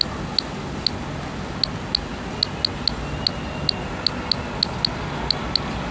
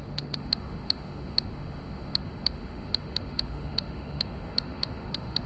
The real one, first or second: first